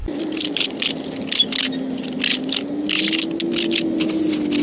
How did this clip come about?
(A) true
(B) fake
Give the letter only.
A